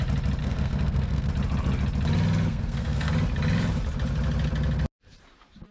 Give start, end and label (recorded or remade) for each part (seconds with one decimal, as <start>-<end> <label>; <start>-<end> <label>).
0.0-0.4 recorded; 0.4-1.3 remade; 1.3-2.5 recorded; 2.5-3.1 remade; 3.1-5.7 recorded